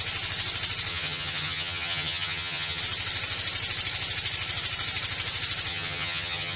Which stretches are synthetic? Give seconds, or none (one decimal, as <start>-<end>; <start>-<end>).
0.9-2.8; 5.7-6.6